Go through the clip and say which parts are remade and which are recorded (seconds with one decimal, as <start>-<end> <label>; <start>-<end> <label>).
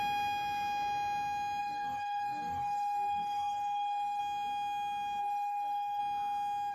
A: 0.0-1.6 recorded; 1.6-4.2 remade; 4.2-5.2 recorded; 5.2-6.0 remade; 6.0-6.7 recorded